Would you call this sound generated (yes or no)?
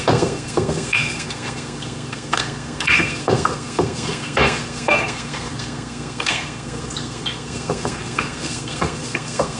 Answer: yes